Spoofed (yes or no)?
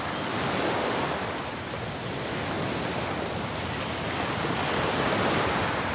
no